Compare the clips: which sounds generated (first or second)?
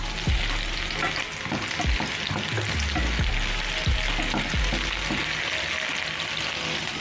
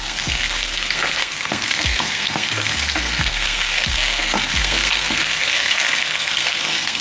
second